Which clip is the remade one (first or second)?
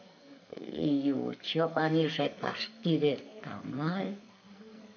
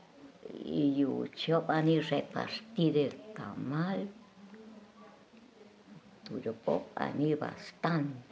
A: first